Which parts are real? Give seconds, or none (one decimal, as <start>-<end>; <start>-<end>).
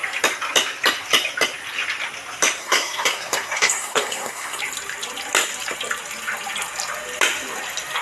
0.0-2.6; 4.6-8.0